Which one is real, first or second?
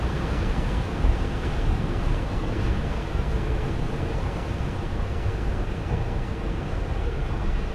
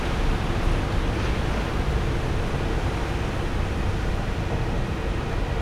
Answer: second